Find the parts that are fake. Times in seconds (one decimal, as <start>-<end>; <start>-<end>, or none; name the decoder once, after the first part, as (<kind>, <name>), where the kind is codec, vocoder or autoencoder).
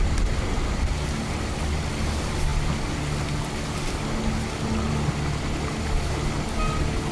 none